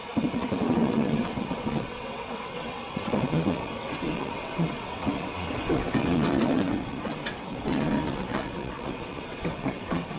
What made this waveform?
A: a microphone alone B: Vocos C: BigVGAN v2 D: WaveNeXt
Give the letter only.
D